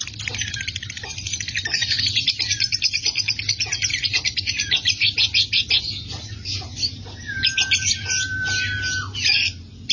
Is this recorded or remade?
recorded